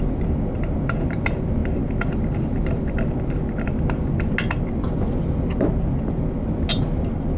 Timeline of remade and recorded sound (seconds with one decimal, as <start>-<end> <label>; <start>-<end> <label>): 0.0-7.4 recorded